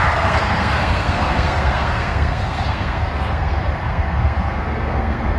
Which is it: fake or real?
fake